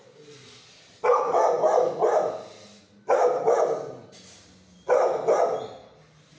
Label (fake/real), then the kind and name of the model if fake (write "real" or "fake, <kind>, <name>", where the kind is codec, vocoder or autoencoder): real